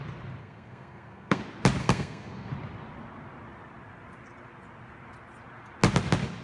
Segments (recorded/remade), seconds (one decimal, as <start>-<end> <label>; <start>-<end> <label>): 0.0-0.4 recorded; 0.4-1.4 remade; 1.4-1.8 recorded; 1.8-2.5 remade; 2.5-6.4 recorded